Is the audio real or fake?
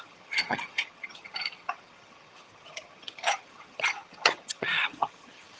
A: fake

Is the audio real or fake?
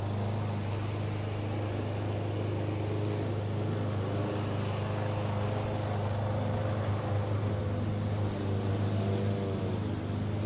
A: real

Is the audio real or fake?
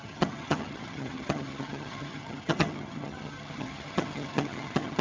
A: fake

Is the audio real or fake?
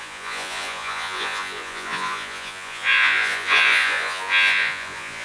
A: fake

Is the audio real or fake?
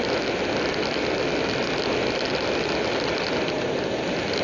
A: real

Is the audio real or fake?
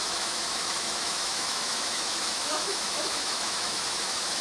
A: fake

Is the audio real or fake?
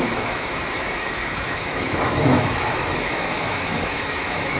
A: fake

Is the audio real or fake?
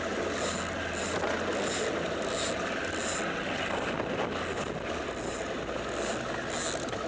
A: real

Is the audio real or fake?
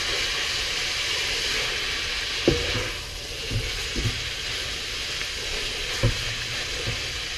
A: real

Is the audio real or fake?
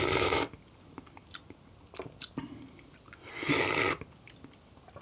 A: real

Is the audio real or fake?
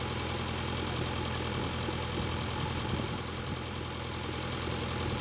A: real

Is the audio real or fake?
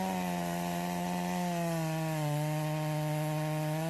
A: real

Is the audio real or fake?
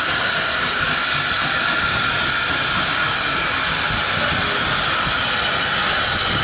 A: real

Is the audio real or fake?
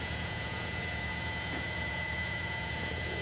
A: fake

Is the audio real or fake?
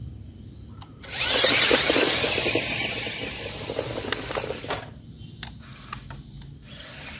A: real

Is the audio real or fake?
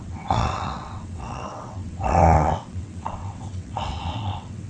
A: fake